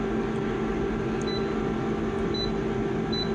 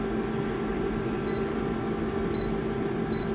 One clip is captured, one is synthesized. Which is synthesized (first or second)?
second